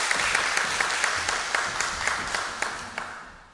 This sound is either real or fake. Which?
real